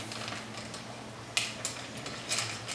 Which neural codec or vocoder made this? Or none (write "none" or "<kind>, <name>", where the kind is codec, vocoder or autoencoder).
none